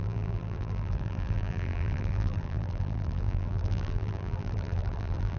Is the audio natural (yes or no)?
no